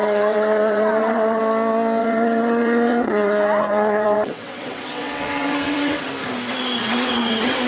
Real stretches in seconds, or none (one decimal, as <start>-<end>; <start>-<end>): 1.4-2.0; 6.1-6.8